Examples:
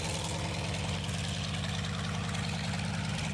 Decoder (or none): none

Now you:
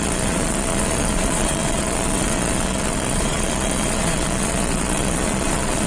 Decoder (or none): vocoder, Vocos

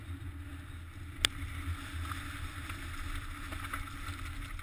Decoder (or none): none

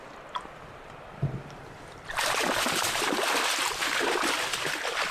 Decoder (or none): none